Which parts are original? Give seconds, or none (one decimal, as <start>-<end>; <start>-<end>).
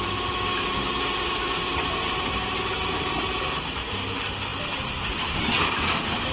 0.0-6.3